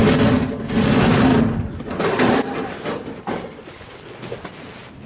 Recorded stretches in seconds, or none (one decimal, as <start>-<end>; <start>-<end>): 0.0-1.3; 4.3-5.1